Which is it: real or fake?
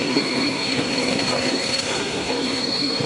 fake